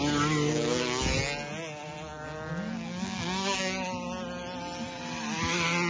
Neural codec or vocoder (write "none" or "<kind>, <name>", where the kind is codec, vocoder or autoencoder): none